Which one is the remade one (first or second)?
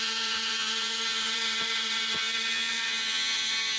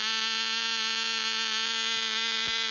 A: first